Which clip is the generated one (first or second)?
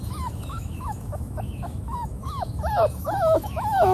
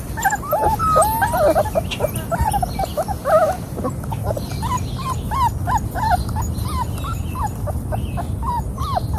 first